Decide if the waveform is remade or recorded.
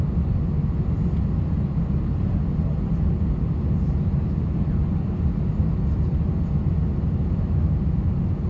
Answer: recorded